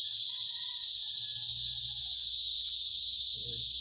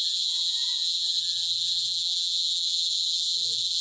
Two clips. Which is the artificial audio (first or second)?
second